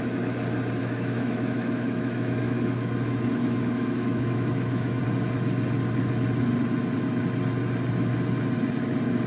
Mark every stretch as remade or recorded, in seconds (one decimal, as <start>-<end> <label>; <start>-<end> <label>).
0.0-0.8 recorded; 0.8-5.0 remade; 5.0-9.3 recorded